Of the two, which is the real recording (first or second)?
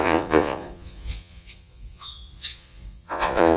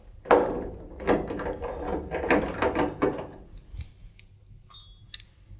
second